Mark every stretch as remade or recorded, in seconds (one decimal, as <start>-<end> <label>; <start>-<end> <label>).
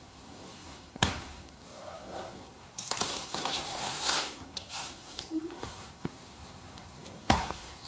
0.0-7.9 remade